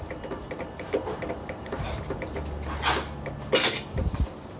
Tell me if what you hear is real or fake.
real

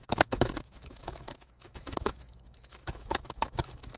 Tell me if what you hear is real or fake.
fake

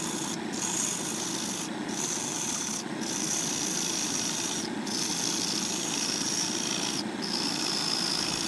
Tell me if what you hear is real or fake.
real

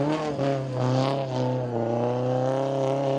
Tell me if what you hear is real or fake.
real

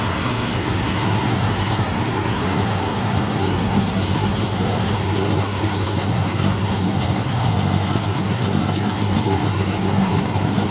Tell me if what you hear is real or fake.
fake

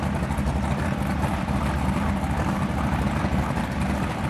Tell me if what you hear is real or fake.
real